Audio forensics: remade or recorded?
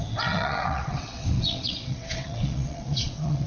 remade